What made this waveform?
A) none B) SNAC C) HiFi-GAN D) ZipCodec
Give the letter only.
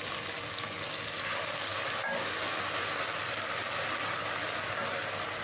A